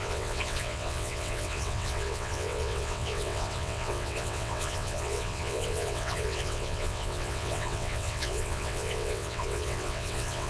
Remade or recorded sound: remade